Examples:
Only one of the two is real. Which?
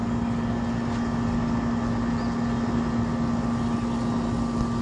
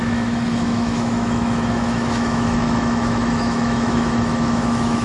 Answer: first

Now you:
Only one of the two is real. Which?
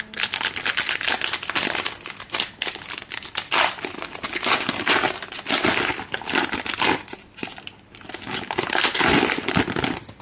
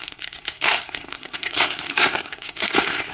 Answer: first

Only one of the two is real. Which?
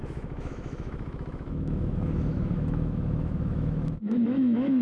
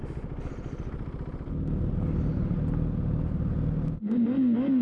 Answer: second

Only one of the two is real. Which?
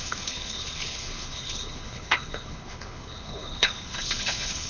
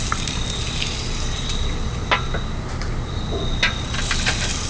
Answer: second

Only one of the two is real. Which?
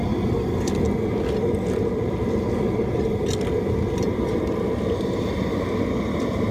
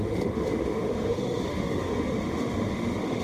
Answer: first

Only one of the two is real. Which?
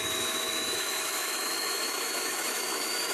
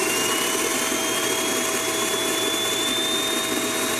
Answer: second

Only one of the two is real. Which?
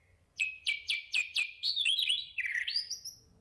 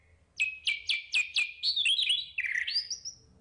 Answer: second